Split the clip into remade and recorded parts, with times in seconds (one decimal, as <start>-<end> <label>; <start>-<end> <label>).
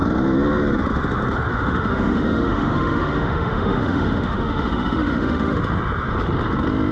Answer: 0.0-1.5 recorded; 1.5-5.6 remade; 5.6-6.9 recorded